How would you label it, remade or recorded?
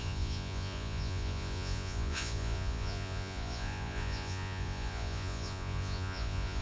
remade